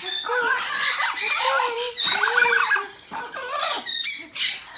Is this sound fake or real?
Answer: real